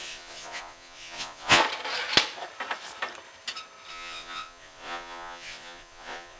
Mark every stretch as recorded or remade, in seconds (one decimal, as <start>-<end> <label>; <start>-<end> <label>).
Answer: 0.0-1.6 remade; 1.6-3.9 recorded; 3.9-6.4 remade